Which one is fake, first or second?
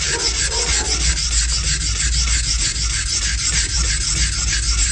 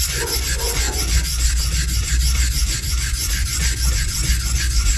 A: second